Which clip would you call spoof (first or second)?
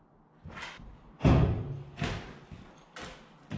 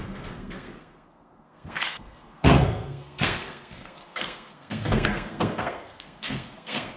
second